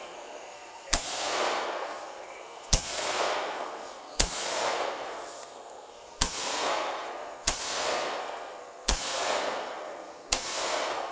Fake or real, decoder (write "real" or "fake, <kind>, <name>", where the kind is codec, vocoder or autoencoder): fake, codec, SNAC